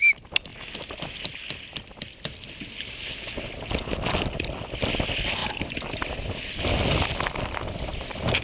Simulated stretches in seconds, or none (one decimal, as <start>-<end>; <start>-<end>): 0.0-0.5; 1.2-5.4; 6.6-8.4